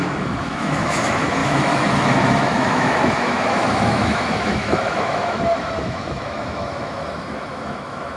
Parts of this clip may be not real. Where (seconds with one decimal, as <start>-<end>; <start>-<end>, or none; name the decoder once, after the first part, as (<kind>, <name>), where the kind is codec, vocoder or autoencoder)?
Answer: 0.0-8.2 (autoencoder, DAC-VAE)